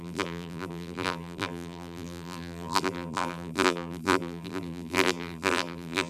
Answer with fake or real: fake